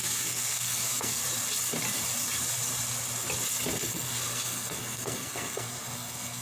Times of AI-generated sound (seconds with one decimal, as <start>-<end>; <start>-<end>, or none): 0.0-1.2; 3.8-6.4